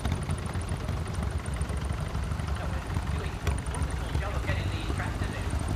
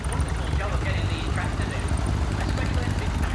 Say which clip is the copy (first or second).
first